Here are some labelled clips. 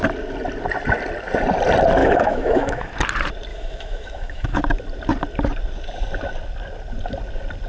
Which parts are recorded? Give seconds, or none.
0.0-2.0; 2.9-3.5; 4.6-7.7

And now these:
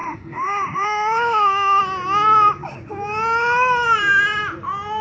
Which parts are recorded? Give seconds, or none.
1.8-5.0

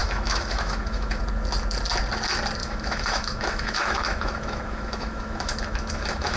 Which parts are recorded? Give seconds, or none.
1.2-2.6

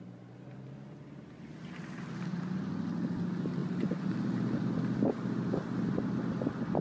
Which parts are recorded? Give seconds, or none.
0.0-6.8

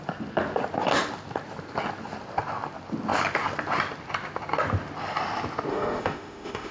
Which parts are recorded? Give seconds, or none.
0.0-5.7

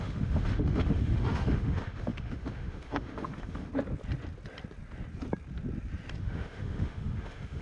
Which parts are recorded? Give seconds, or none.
3.7-6.2

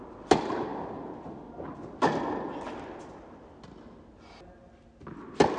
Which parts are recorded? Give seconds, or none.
0.0-5.6